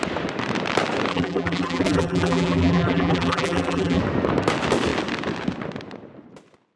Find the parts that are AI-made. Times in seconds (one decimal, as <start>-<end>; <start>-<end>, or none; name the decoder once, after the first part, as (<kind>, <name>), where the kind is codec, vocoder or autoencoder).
1.1-4.0 (vocoder, BigVGAN v2)